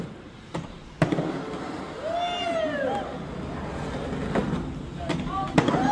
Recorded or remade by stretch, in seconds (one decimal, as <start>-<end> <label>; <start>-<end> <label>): 0.0-5.9 recorded